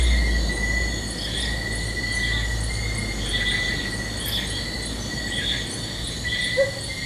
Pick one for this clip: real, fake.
real